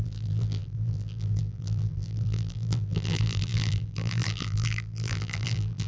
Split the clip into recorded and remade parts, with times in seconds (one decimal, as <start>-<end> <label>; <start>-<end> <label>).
0.0-5.9 remade